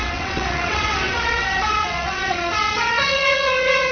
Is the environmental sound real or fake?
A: fake